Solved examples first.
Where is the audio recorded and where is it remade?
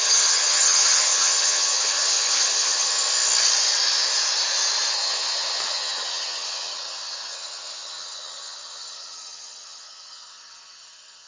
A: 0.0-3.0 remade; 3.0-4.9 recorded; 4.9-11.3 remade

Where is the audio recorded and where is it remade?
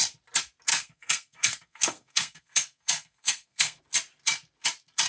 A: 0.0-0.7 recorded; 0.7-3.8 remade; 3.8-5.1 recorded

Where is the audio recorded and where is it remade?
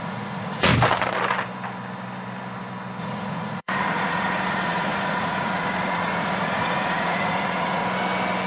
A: 0.0-0.7 remade; 0.7-3.0 recorded; 3.0-7.8 remade; 7.8-8.5 recorded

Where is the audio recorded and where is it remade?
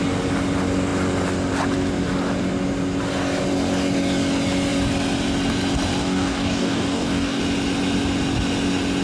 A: 0.0-6.0 recorded; 6.0-7.4 remade; 7.4-9.0 recorded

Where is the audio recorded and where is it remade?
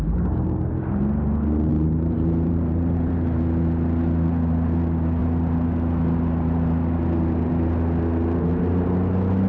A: 0.0-1.7 recorded; 1.7-3.1 remade; 3.1-9.5 recorded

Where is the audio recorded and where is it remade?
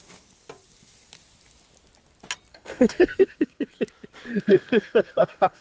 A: 0.0-2.5 recorded; 2.5-3.8 remade; 3.8-4.3 recorded; 4.3-5.6 remade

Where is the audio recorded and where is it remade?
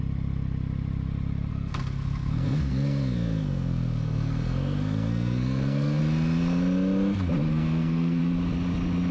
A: 0.0-1.5 recorded; 1.5-6.0 remade; 6.0-7.5 recorded; 7.5-8.2 remade; 8.2-9.1 recorded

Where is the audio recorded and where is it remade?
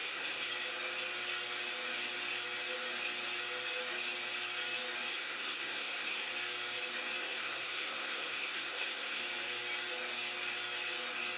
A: 0.0-0.5 remade; 0.5-5.1 recorded; 5.1-6.3 remade; 6.3-7.2 recorded; 7.2-9.2 remade; 9.2-11.4 recorded